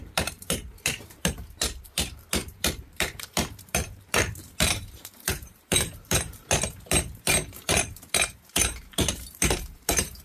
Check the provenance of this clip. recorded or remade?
remade